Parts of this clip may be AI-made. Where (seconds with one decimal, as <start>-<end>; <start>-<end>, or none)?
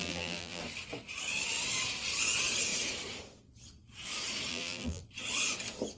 0.0-0.6; 4.5-5.0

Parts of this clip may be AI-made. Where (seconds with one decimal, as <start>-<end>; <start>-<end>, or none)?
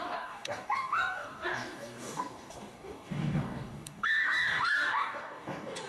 0.0-5.9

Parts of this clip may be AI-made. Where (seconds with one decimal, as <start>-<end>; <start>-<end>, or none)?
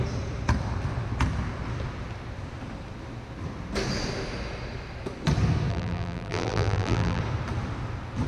5.7-7.2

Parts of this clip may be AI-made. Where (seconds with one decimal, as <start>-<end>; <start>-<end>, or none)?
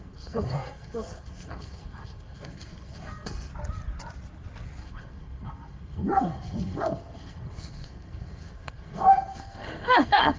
0.0-3.5; 4.8-10.4